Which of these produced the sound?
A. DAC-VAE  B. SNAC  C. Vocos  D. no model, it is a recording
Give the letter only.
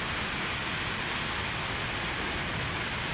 D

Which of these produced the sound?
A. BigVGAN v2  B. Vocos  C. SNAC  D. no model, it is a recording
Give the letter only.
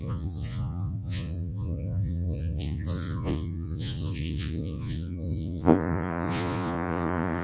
B